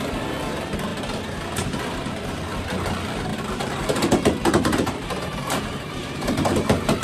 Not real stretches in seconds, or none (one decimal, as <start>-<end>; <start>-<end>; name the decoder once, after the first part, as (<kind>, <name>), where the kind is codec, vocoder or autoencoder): 0.9-1.4 (vocoder, BigVGAN v2); 3.3-7.0